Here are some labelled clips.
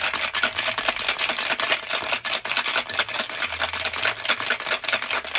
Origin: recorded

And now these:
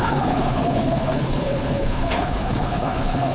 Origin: remade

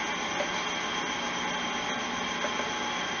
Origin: recorded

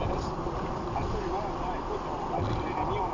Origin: recorded